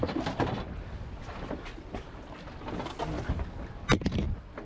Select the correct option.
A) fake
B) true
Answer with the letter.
B